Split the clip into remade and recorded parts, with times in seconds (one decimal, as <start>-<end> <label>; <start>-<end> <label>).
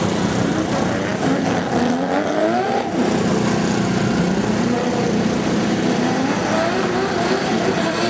0.0-8.1 recorded